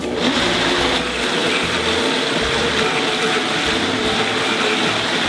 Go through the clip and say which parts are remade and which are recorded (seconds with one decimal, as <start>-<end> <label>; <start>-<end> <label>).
0.0-1.4 recorded; 1.4-4.6 remade; 4.6-5.3 recorded